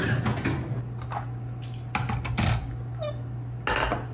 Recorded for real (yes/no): yes